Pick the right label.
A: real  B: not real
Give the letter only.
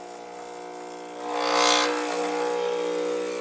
A